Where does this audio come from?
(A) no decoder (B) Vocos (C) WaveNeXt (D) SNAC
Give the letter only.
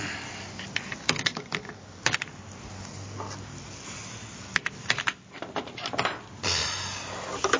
A